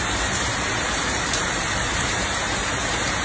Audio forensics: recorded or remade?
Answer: remade